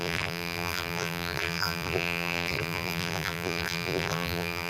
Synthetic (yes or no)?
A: yes